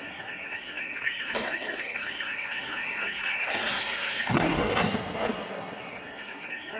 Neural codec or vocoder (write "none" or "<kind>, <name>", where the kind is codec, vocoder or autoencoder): codec, SNAC